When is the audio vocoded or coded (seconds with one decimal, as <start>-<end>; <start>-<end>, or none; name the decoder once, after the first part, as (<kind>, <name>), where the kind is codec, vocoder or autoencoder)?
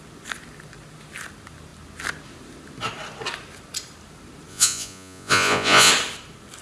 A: 4.5-5.9 (vocoder, Vocos)